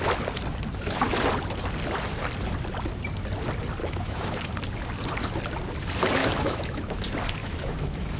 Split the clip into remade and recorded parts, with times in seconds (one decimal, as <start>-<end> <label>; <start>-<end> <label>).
0.0-3.8 recorded; 3.8-4.4 remade; 4.4-6.2 recorded; 6.2-7.0 remade; 7.0-7.4 recorded; 7.4-8.2 remade